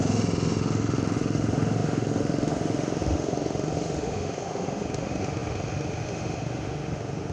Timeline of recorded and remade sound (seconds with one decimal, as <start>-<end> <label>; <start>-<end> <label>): 0.0-7.3 remade